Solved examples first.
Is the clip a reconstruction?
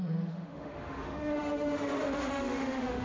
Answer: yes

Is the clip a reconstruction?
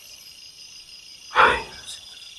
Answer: no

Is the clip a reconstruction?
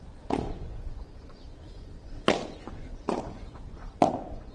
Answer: yes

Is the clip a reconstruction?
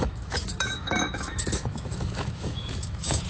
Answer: yes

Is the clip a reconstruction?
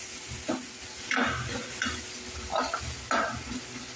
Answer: no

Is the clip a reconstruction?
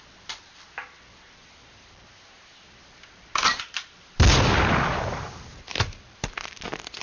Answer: no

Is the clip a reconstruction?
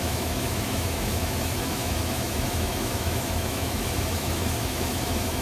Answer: yes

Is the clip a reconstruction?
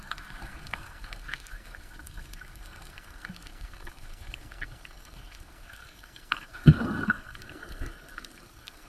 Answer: yes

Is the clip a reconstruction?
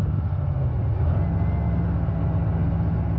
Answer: no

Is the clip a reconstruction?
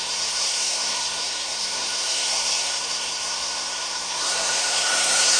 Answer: yes